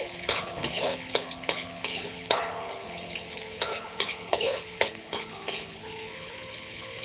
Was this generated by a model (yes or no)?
yes